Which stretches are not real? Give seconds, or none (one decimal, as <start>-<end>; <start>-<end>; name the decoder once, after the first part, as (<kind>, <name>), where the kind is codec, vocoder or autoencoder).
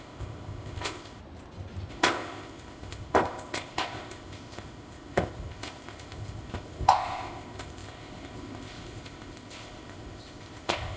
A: 0.0-1.2 (codec, ZipCodec); 1.9-11.0